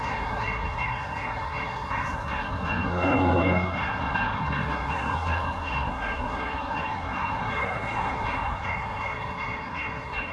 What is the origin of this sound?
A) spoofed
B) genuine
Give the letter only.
A